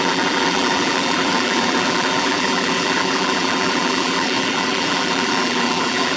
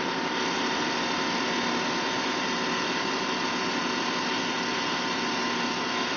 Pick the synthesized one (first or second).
first